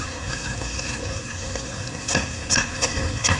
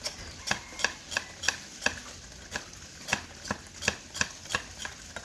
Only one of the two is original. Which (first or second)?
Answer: second